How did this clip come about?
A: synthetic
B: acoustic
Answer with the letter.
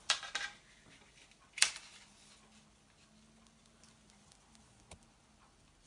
B